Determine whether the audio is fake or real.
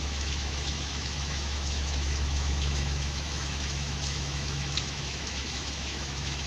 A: fake